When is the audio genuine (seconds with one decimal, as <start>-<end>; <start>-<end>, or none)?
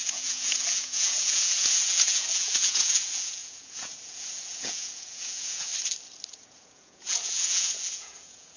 5.7-6.3